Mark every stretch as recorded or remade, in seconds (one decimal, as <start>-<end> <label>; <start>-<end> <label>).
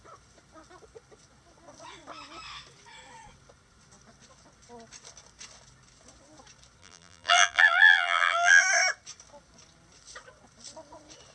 0.0-6.8 recorded; 6.8-8.6 remade; 8.6-11.3 recorded